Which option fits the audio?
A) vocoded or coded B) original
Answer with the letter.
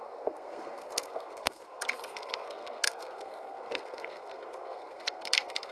A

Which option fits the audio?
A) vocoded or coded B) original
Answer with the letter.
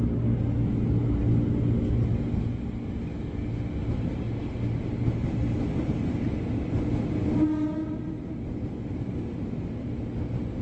B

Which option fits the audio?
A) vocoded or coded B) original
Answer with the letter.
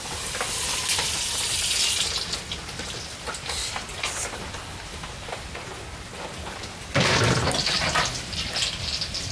B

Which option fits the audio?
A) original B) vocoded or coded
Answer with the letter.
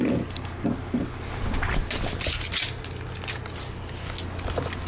A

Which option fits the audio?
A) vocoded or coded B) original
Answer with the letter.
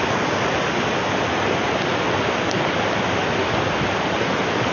B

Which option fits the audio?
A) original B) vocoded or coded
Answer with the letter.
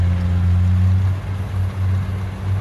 A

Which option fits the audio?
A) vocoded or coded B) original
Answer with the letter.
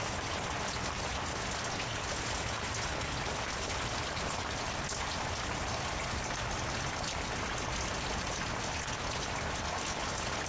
B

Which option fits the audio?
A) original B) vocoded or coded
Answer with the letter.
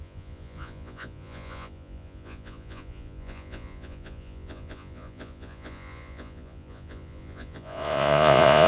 B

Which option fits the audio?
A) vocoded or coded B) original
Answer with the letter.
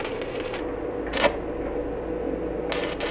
B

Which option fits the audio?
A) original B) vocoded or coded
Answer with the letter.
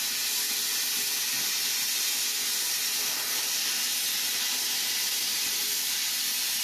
A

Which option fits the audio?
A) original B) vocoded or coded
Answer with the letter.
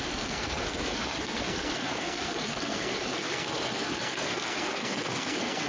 B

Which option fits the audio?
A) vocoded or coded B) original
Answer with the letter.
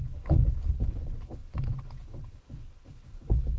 A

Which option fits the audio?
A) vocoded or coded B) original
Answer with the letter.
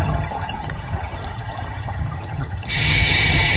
A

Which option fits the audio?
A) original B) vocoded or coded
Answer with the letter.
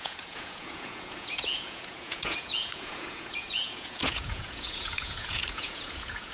B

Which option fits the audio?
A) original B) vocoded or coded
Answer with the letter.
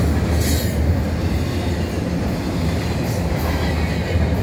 A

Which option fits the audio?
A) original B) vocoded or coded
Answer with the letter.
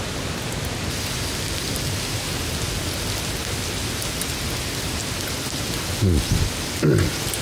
A